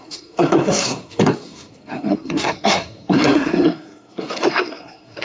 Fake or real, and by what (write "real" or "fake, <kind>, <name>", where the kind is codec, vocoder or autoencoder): fake, codec, SNAC